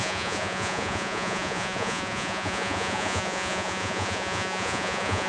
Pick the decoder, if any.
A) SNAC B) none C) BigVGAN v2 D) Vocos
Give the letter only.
D